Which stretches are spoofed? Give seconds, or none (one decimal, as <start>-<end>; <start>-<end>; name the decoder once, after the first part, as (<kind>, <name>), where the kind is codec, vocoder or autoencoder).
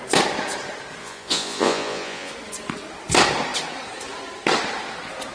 1.0-2.3 (vocoder, Vocos)